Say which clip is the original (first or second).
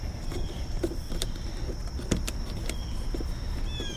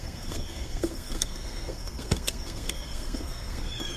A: first